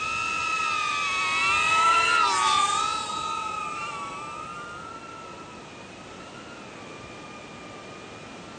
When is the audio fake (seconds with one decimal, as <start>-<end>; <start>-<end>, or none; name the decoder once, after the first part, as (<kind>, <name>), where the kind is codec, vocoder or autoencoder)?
none